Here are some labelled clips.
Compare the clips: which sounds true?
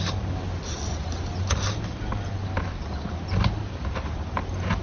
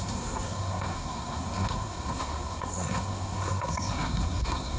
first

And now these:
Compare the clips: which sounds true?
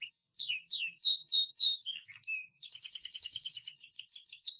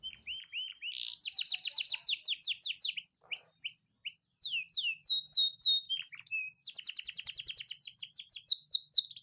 second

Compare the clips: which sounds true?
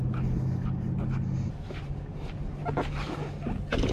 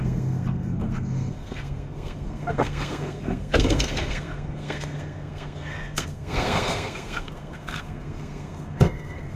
first